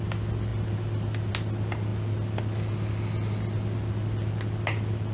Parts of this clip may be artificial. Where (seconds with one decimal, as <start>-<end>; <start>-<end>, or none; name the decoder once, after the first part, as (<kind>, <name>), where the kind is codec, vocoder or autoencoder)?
0.5-1.3 (vocoder, BigVGAN v2)